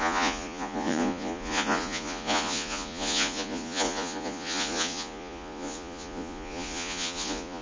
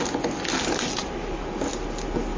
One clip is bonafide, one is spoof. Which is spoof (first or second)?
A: first